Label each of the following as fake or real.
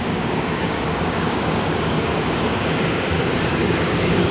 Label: fake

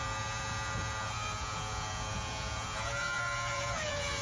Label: fake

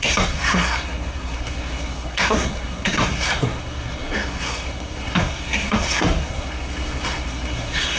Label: fake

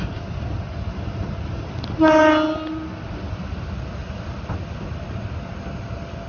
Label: real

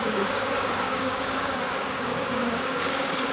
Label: fake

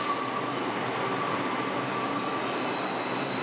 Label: real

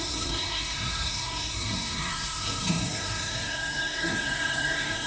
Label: fake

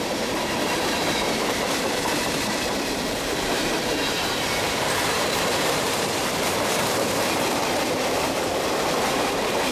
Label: fake